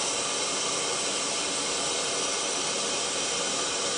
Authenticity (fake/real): real